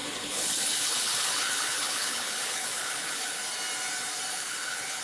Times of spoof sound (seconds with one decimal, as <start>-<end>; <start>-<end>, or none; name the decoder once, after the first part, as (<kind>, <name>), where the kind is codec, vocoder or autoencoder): 0.0-3.4 (codec, HILCodec); 4.3-5.0